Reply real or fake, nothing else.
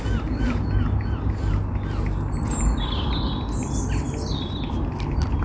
real